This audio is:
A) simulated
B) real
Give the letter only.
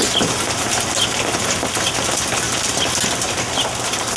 B